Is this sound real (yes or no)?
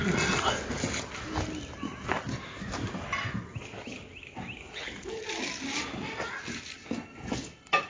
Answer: yes